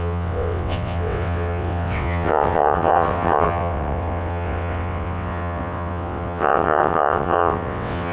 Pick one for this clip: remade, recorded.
remade